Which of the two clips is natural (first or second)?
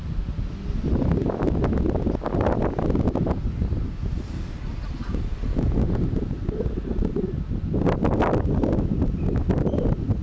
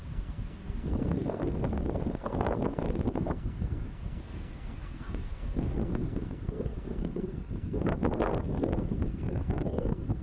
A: first